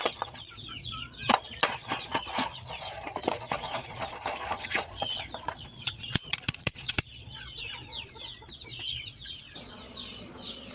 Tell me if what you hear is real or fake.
fake